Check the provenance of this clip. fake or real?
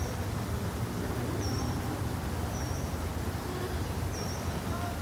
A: real